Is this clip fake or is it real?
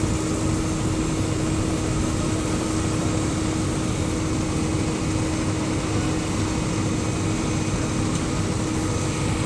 real